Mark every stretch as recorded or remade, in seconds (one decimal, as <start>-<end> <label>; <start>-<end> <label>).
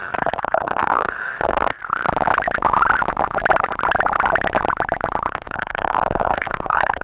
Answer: 0.0-1.8 remade; 1.8-5.3 recorded; 5.3-7.0 remade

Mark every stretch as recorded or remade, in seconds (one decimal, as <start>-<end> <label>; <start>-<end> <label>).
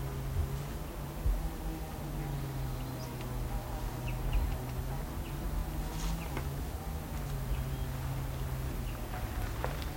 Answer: 0.0-10.0 recorded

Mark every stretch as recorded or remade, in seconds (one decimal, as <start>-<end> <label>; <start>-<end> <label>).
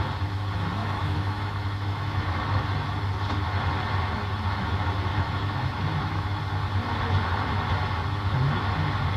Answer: 0.0-0.8 recorded; 0.8-2.6 remade; 2.6-5.1 recorded; 5.1-6.4 remade; 6.4-9.2 recorded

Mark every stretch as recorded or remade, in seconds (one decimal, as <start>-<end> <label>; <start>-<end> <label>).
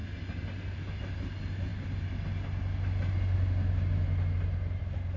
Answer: 0.0-5.2 recorded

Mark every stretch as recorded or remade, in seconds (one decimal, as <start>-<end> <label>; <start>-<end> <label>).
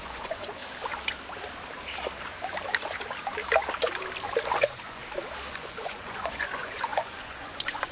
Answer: 0.0-0.6 remade; 0.6-4.6 recorded; 4.6-5.0 remade; 5.0-5.5 recorded; 5.5-7.9 remade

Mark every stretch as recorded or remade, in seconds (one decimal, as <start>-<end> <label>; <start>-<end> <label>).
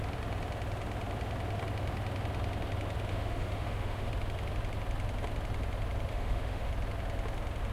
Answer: 0.0-3.1 recorded; 3.1-4.1 remade; 4.1-6.1 recorded; 6.1-6.7 remade; 6.7-7.7 recorded